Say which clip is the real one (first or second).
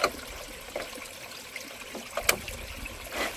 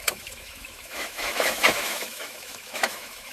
first